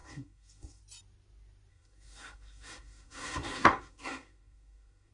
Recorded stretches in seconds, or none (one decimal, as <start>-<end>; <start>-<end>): 0.8-1.7